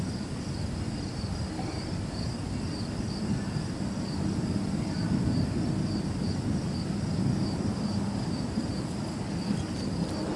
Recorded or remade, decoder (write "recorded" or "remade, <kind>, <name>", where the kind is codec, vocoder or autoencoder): recorded